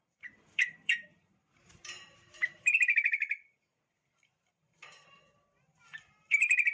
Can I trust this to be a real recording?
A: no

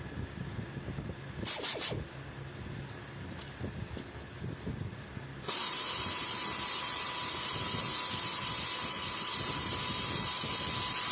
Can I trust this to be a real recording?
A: yes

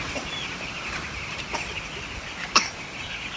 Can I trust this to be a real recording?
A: no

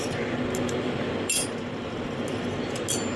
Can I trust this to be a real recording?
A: yes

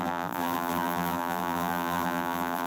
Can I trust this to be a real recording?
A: no